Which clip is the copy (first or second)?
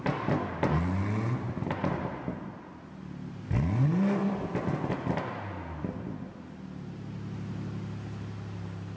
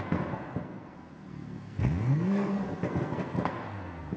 second